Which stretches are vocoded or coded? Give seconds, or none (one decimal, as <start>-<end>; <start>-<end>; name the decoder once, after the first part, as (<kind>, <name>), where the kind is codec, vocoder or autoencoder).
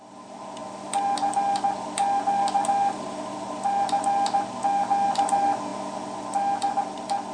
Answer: none